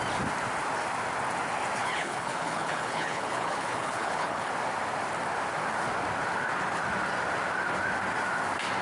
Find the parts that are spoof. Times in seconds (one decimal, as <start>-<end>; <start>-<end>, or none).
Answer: 1.8-4.5